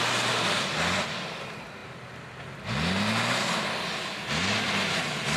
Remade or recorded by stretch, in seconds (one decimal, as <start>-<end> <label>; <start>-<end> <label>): 0.0-5.4 recorded